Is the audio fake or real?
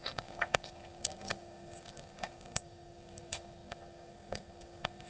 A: fake